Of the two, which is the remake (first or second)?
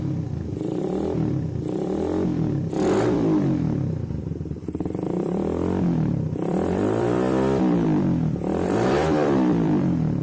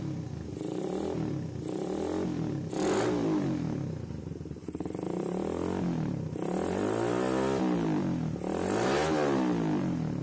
first